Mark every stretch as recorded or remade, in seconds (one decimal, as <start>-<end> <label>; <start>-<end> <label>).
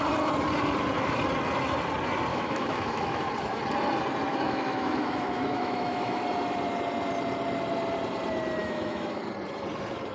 0.0-2.3 recorded; 2.3-3.3 remade; 3.3-4.3 recorded; 4.3-6.2 remade; 6.2-8.6 recorded; 8.6-9.2 remade; 9.2-10.1 recorded